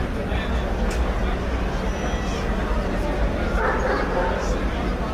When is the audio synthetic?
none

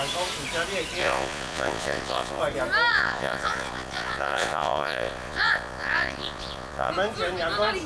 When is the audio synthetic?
1.0-2.4 (vocoder, Vocos); 2.9-6.9

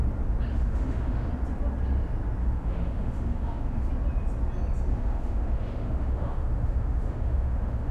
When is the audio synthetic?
0.5-1.3 (autoencoder, DAC-VAE); 2.4-3.9; 4.9-7.9

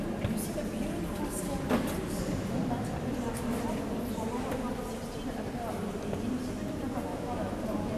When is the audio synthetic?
7.1-7.6 (autoencoder, DAC-VAE)

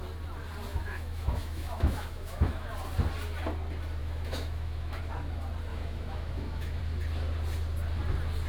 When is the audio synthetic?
0.7-2.7 (autoencoder, DAC-VAE); 4.0-5.0; 5.7-6.8

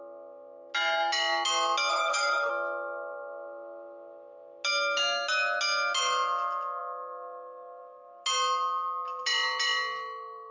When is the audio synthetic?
1.9-2.5 (codec, SNAC)

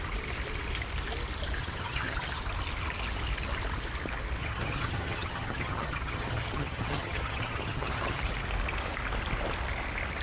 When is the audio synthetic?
1.6-2.4 (vocoder, HiFi-GAN); 4.4-8.2

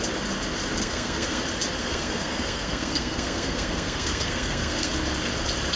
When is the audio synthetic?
0.8-1.4 (codec, SNAC); 1.8-4.9